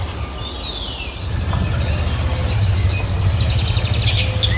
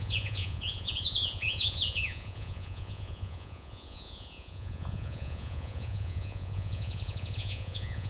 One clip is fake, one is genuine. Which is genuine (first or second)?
first